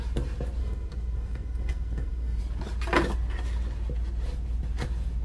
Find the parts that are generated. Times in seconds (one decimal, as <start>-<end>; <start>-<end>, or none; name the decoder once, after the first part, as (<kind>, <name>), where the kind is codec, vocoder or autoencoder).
0.6-2.4 (codec, SNAC)